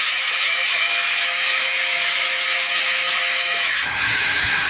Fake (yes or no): yes